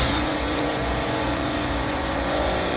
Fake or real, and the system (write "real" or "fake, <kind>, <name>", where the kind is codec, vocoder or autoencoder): fake, vocoder, Vocos